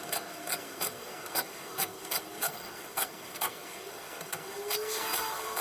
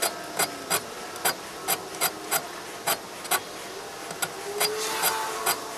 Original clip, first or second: second